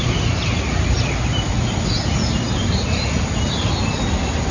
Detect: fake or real real